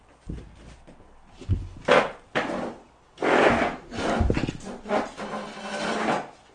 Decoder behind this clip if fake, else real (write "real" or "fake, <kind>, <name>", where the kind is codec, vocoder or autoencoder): real